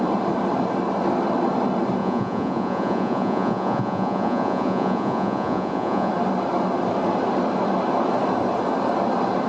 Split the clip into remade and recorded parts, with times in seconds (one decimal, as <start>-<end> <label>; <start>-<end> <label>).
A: 0.0-2.0 recorded; 2.0-6.1 remade; 6.1-9.5 recorded